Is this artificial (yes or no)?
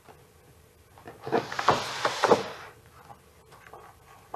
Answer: no